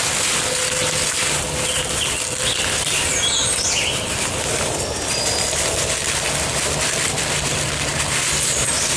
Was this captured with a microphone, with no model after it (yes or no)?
yes